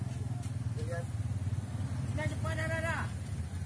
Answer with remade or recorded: recorded